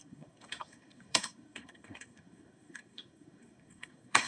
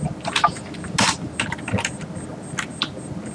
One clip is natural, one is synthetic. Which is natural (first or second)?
second